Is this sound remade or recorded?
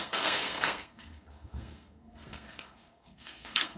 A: remade